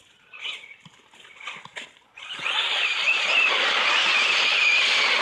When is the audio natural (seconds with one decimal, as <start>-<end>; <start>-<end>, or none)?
0.0-5.2